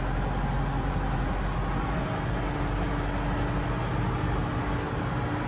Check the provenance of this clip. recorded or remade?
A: recorded